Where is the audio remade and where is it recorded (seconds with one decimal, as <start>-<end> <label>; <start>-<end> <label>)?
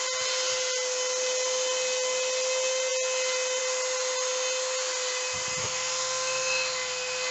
0.0-5.6 recorded; 5.6-7.3 remade